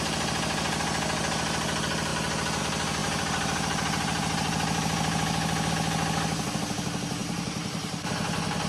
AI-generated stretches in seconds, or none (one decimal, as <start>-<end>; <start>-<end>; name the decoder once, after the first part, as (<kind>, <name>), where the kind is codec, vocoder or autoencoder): 3.0-5.7 (vocoder, BigVGAN v2); 7.2-8.7